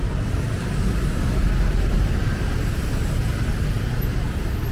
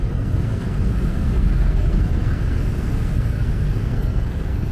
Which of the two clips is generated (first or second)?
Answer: second